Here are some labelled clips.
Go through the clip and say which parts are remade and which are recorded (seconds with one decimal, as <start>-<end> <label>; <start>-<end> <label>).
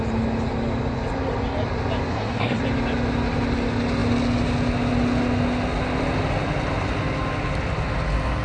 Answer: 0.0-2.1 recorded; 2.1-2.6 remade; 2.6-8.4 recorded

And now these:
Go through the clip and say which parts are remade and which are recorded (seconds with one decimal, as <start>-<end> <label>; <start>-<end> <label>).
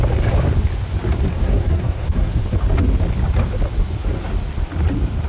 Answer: 0.0-1.3 recorded; 1.3-2.4 remade; 2.4-5.3 recorded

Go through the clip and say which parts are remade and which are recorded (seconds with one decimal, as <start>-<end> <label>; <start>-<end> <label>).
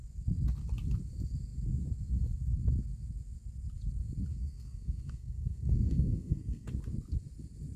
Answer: 0.0-4.3 recorded; 4.3-6.7 remade; 6.7-7.8 recorded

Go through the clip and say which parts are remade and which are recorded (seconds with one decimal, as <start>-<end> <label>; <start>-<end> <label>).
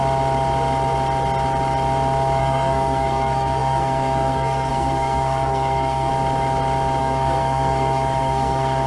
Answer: 0.0-2.4 recorded; 2.4-6.1 remade; 6.1-7.0 recorded; 7.0-8.9 remade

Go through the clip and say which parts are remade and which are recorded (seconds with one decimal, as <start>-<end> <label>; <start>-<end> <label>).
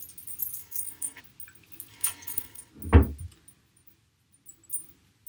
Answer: 0.0-0.6 recorded; 0.6-1.2 remade; 1.2-1.9 recorded; 1.9-2.7 remade; 2.7-5.3 recorded